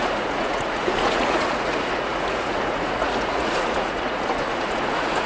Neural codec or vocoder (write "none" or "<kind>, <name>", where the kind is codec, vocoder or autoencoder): vocoder, Vocos